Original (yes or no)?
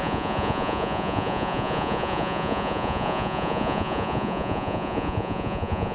no